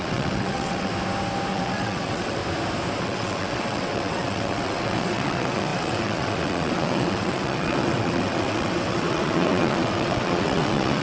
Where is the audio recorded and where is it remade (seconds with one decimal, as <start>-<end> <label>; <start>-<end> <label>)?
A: 0.0-0.9 remade; 0.9-1.5 recorded; 1.5-2.4 remade; 2.4-3.0 recorded; 3.0-11.0 remade